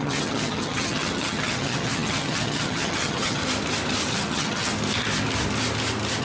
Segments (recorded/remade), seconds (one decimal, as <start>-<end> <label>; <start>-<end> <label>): 0.0-3.4 remade; 3.4-4.1 recorded; 4.1-4.7 remade; 4.7-6.2 recorded